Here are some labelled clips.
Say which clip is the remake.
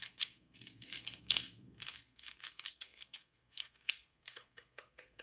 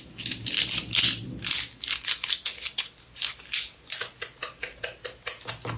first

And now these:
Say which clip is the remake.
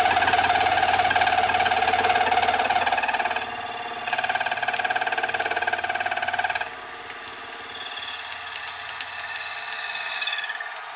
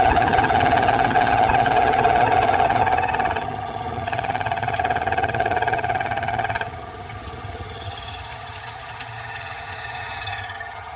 second